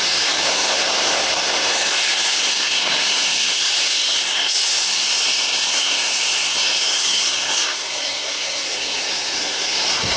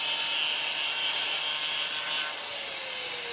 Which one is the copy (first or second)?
first